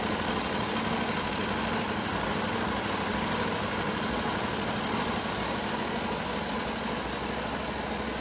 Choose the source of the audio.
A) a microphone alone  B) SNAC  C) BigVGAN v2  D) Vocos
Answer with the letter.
A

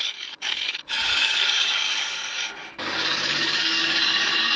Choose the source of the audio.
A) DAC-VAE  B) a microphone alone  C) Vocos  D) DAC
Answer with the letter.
D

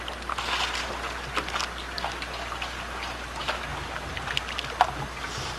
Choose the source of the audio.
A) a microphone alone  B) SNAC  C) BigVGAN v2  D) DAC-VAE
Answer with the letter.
A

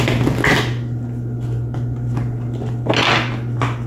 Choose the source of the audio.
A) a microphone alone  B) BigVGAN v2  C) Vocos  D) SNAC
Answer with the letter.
A